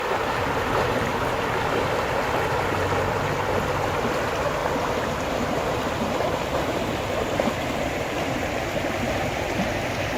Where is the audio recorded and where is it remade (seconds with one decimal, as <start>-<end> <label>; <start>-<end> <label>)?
0.0-4.6 recorded; 4.6-5.8 remade; 5.8-10.2 recorded